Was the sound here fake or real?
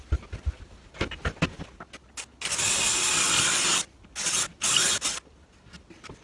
real